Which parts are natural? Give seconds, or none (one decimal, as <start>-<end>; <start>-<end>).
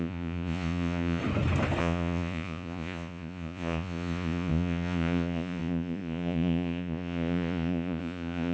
1.2-1.8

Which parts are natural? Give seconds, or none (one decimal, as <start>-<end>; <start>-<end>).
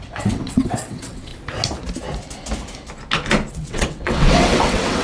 1.3-3.5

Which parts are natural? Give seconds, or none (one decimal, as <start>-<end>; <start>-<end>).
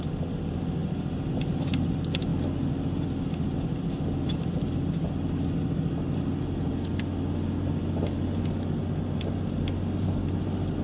0.0-10.8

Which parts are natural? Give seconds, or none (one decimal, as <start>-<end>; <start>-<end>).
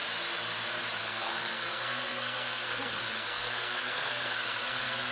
0.0-1.0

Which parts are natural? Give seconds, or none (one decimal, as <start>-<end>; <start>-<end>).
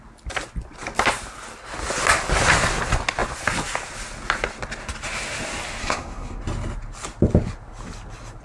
0.0-5.8; 6.4-8.4